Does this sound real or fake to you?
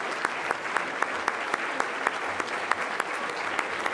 real